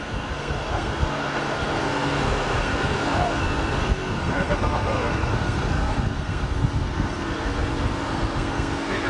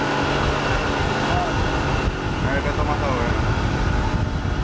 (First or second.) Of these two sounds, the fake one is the first